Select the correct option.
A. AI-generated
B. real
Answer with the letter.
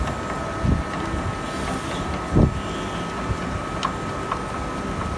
B